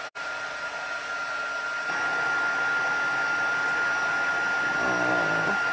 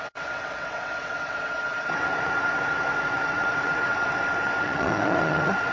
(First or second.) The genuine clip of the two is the first